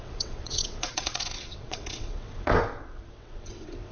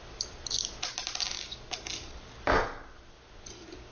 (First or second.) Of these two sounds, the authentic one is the second